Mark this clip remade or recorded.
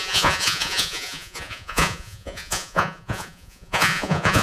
remade